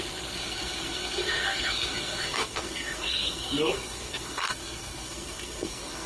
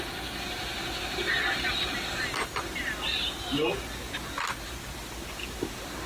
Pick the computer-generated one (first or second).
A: first